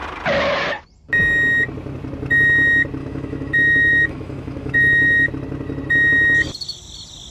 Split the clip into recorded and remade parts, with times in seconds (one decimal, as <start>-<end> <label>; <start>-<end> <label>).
0.0-3.0 recorded; 3.0-5.3 remade; 5.3-7.3 recorded

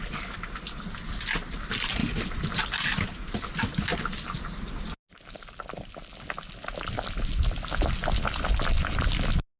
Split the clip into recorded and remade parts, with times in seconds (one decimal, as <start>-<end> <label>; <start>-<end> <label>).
0.0-9.6 recorded

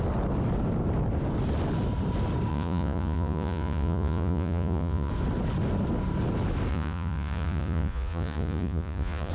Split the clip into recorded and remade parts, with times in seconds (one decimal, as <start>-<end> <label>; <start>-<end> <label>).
0.0-2.5 recorded; 2.5-5.1 remade; 5.1-6.7 recorded; 6.7-9.3 remade

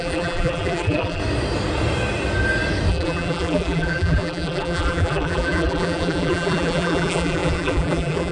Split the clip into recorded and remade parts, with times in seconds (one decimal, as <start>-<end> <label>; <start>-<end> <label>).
0.0-1.2 remade; 1.2-2.9 recorded; 2.9-8.3 remade

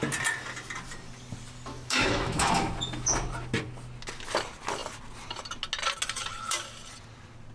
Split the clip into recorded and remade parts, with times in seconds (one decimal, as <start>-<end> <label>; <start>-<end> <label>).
0.0-1.7 recorded; 1.7-2.7 remade; 2.7-7.5 recorded

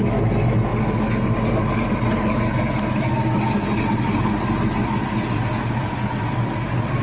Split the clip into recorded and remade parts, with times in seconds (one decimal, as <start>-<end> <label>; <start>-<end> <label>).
0.0-7.0 recorded

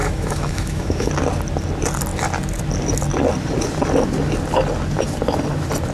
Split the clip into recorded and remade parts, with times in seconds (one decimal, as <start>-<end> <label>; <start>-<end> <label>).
0.0-1.1 remade; 1.1-5.9 recorded

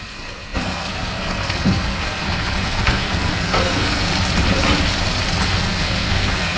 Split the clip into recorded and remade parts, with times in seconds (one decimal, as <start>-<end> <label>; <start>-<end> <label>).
0.0-4.1 remade; 4.1-5.5 recorded; 5.5-6.6 remade